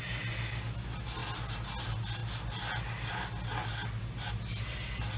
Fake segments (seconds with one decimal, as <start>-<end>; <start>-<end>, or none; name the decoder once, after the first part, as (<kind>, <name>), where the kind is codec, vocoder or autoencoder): none